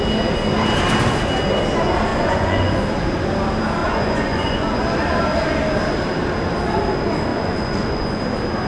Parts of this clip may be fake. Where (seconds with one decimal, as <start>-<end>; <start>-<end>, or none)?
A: 2.1-2.8; 3.8-4.8; 7.3-8.2